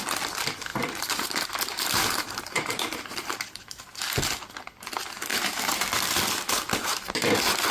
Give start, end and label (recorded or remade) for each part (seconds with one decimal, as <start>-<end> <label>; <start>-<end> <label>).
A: 0.0-0.7 recorded; 0.7-4.0 remade; 4.0-5.3 recorded; 5.3-5.8 remade; 5.8-7.7 recorded